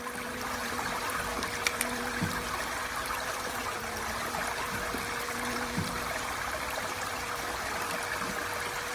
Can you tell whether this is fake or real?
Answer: real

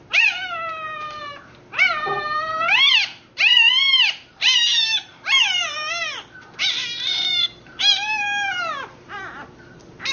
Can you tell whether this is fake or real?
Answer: fake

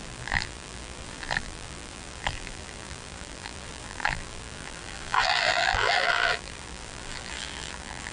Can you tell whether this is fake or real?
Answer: fake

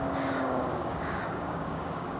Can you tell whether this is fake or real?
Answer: fake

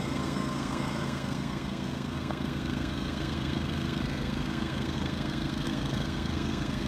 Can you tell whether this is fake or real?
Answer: fake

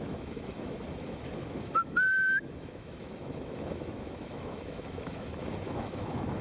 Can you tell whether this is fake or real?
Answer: fake